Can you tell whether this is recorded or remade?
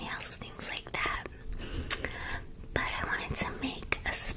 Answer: recorded